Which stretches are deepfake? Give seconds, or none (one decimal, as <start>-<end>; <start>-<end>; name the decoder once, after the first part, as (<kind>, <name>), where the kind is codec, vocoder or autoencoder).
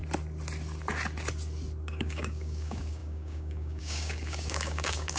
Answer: 1.9-5.2 (codec, DAC)